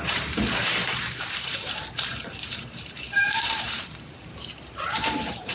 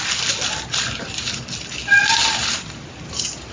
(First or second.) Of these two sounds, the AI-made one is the first